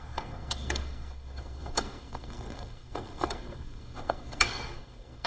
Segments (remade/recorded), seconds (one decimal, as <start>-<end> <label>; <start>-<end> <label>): 0.0-5.3 remade